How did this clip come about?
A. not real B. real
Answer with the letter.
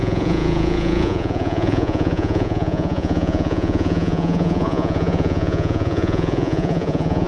A